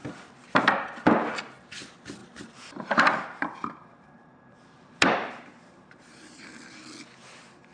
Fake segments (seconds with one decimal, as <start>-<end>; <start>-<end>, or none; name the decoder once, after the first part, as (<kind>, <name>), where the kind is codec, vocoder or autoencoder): 2.2-6.4 (vocoder, BigVGAN v2)